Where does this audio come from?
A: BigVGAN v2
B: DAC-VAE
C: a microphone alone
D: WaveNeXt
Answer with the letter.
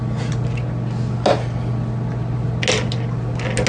C